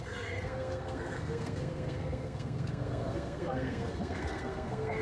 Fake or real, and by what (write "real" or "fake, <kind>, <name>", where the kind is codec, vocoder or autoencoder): fake, codec, SNAC